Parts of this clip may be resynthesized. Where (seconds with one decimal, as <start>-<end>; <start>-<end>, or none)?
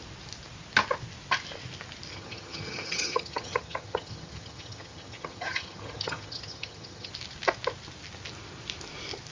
2.1-7.1